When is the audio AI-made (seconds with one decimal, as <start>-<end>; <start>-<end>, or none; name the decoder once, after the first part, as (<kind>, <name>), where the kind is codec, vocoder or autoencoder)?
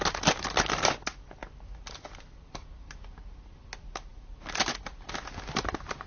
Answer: none